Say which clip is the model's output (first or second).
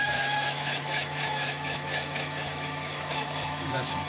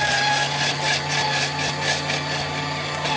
first